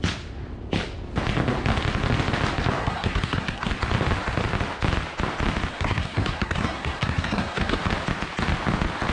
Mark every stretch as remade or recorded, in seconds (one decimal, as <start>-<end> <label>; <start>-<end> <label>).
0.0-2.8 recorded; 2.8-3.7 remade; 3.7-5.7 recorded; 5.7-7.8 remade; 7.8-9.1 recorded